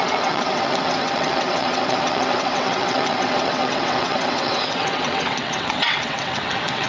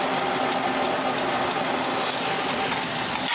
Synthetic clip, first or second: first